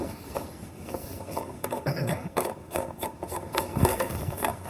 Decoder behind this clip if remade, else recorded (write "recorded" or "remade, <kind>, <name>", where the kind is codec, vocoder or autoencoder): remade, codec, SNAC